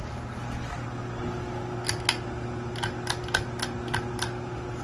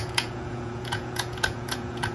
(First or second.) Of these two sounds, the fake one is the second